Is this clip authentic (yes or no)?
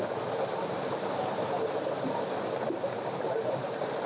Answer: yes